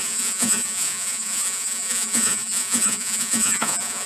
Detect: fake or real fake